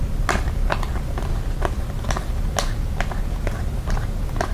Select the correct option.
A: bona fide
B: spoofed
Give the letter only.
A